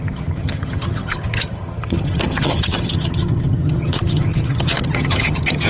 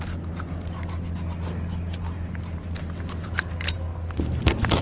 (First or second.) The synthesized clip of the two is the first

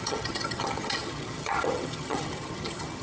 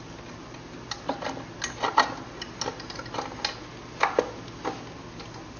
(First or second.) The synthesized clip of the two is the first